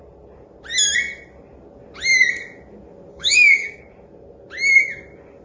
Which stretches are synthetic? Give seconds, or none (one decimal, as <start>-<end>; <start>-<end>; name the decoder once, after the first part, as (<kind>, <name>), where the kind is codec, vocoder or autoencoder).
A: 3.1-3.8 (codec, DAC)